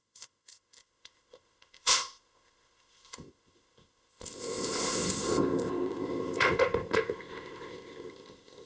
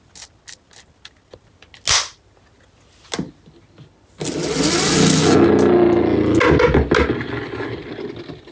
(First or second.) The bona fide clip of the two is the second